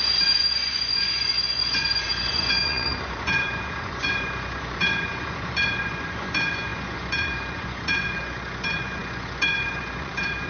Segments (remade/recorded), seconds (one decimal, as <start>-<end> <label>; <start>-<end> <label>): 0.0-10.5 remade